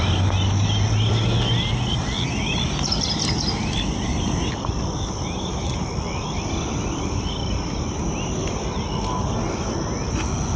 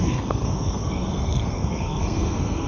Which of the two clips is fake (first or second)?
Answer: second